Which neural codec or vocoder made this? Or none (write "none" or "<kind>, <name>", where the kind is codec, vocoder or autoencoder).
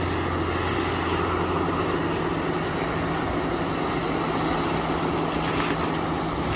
none